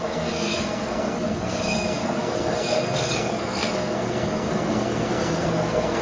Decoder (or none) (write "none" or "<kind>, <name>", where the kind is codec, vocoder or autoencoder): codec, SNAC